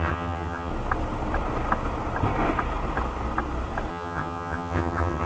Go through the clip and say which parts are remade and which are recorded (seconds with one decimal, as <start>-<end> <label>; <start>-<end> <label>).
0.0-0.7 remade; 0.7-3.9 recorded; 3.9-5.3 remade